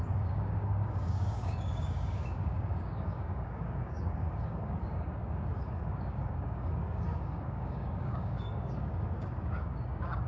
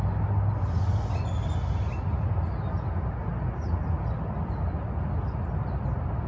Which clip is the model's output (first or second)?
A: first